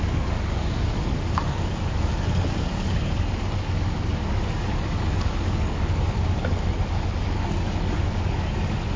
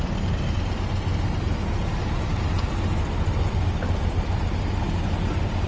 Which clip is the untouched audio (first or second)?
second